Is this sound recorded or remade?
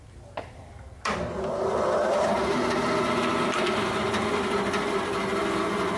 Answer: recorded